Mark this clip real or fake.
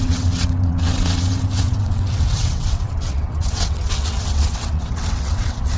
fake